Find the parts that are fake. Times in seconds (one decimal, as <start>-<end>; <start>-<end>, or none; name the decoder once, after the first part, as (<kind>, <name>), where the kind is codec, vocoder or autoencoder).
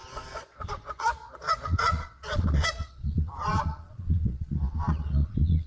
0.0-5.7 (vocoder, Vocos)